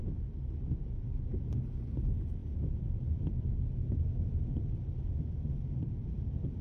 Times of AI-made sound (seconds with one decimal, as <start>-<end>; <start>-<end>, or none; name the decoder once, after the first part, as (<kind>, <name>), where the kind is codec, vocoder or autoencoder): none